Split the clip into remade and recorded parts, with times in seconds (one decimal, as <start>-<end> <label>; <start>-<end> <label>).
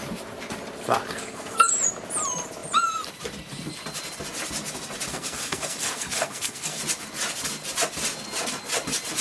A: 0.0-1.1 recorded; 1.1-1.7 remade; 1.7-5.1 recorded; 5.1-6.8 remade; 6.8-9.2 recorded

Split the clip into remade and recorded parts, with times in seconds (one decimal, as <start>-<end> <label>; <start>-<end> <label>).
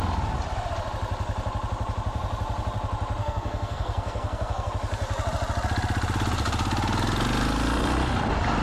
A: 0.0-3.2 recorded; 3.2-4.7 remade; 4.7-8.6 recorded